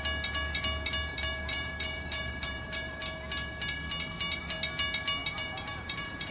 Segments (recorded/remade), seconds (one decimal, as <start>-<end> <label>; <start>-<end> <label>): 0.0-1.1 recorded; 1.1-3.0 remade; 3.0-5.2 recorded; 5.2-6.3 remade